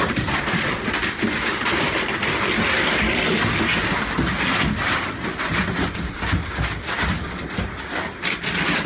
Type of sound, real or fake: real